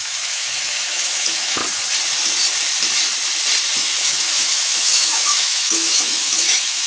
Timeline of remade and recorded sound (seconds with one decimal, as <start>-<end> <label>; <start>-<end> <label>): 0.0-1.6 remade; 1.6-3.8 recorded; 3.8-6.9 remade